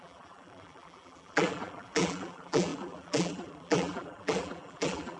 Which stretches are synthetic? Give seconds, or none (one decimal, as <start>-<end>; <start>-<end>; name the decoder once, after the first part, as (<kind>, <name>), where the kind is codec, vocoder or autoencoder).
0.0-5.2 (vocoder, BigVGAN v2)